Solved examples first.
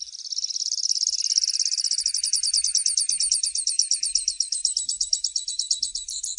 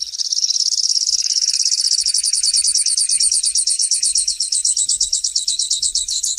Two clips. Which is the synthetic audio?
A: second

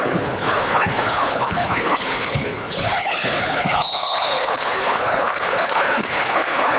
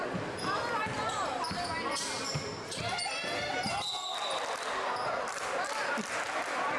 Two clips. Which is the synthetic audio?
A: first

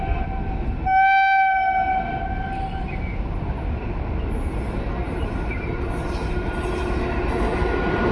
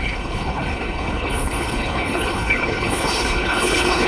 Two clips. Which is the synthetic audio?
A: second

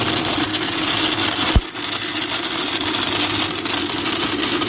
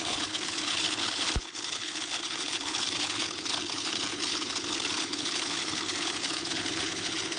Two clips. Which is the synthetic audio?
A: second